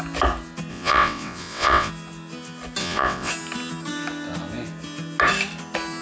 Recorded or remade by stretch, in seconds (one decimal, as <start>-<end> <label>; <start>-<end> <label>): 0.0-0.7 recorded; 0.7-1.9 remade; 1.9-2.8 recorded; 2.8-3.3 remade; 3.3-6.0 recorded